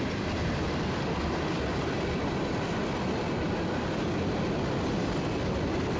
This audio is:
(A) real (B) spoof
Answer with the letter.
A